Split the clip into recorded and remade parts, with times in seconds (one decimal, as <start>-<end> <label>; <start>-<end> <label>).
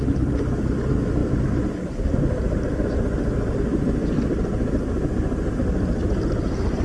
0.0-6.8 recorded